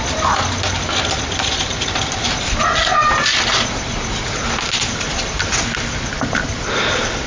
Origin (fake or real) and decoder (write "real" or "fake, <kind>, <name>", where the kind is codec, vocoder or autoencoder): real